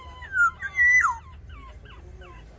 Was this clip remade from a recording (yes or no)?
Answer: no